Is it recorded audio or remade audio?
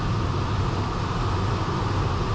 recorded